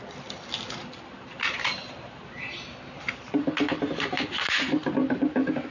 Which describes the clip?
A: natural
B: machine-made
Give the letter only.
A